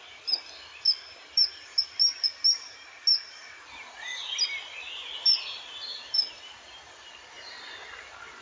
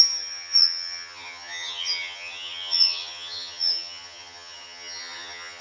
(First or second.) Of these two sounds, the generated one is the second